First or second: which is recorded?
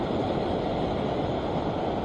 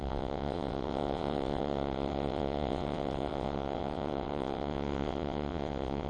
first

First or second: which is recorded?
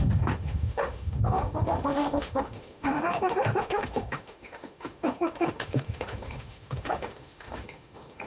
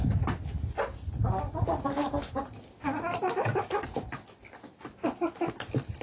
second